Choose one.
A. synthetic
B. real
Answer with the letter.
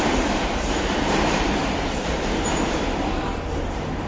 A